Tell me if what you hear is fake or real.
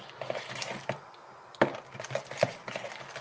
real